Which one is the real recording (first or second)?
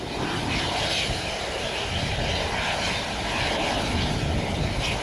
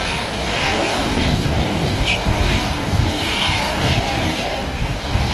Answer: first